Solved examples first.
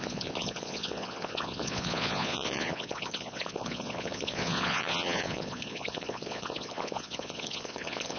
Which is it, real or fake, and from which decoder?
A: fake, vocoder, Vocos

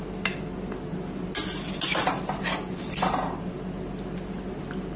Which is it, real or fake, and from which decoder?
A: real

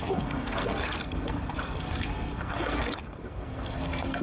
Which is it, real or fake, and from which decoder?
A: fake, codec, SNAC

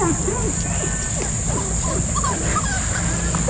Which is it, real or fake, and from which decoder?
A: real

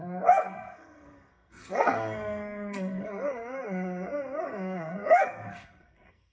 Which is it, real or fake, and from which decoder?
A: fake, codec, SNAC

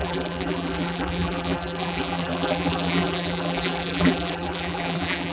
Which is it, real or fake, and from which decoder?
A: fake, vocoder, BigVGAN v2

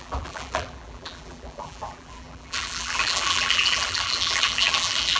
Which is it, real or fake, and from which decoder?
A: fake, vocoder, BigVGAN v2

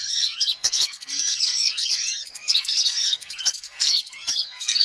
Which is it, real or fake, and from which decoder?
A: fake, codec, SNAC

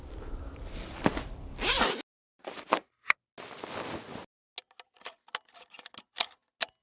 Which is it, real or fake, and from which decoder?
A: real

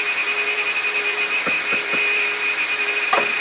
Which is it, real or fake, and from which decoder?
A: real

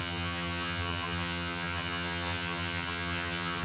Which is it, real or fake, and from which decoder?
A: fake, vocoder, HiFi-GAN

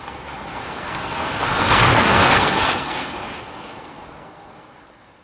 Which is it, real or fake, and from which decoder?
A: fake, codec, SNAC